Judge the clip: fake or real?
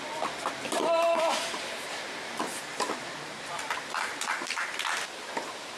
real